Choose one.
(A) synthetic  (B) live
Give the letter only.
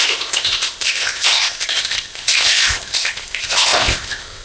A